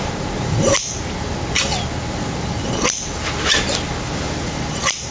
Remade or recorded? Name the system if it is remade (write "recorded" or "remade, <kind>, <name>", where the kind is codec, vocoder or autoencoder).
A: recorded